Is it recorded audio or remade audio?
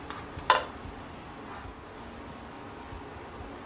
recorded